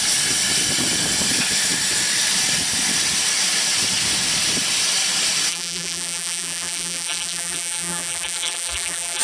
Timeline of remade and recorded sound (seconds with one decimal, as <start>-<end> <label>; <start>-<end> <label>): 0.0-5.5 recorded; 5.5-9.2 remade